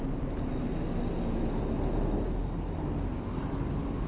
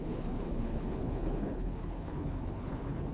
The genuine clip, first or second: first